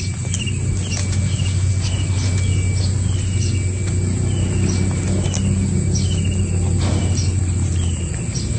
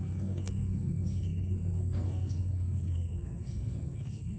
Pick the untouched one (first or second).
first